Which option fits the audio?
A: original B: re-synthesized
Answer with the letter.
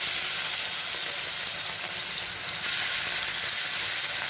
A